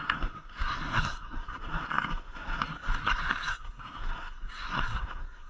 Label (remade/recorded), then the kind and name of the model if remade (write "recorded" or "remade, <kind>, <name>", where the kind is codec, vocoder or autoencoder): remade, codec, SNAC